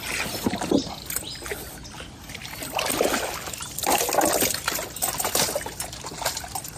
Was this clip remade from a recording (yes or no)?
no